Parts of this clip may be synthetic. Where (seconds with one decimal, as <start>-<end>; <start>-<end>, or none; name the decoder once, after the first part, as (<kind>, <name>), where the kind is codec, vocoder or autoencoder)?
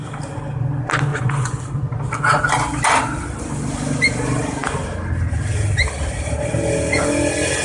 1.1-1.6 (vocoder, Vocos)